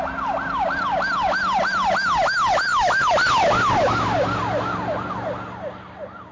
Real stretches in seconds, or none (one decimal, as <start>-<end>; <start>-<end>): 0.0-6.3